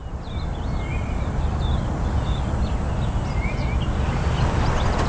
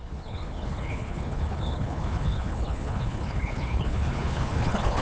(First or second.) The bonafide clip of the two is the first